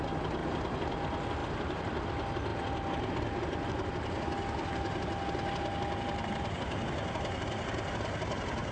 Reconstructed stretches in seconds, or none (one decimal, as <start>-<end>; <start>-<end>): 0.4-1.0; 1.4-2.0